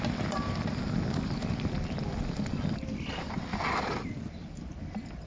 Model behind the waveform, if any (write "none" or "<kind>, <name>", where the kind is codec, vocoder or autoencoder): vocoder, BigVGAN v2